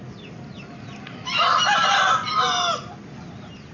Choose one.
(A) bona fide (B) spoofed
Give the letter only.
A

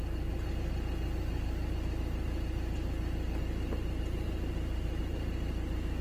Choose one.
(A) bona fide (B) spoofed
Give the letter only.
A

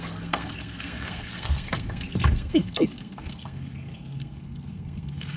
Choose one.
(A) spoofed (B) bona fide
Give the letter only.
A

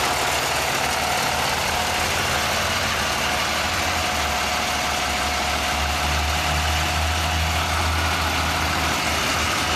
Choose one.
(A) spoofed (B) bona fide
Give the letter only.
B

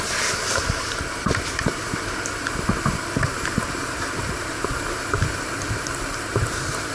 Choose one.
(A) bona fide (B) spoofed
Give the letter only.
B